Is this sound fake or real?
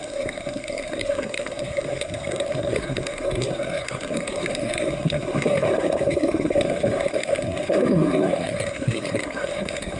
fake